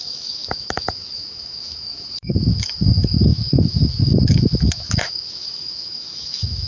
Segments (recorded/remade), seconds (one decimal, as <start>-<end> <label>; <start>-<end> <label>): 0.0-6.7 remade